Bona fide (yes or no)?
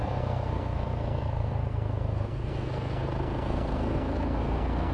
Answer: no